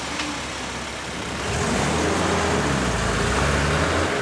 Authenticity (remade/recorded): recorded